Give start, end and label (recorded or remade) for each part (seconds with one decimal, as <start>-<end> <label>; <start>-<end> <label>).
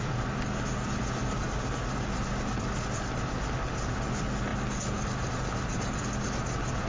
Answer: 0.0-6.9 recorded